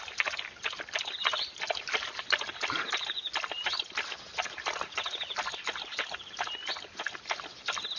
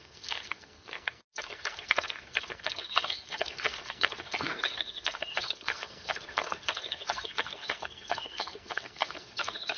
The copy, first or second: second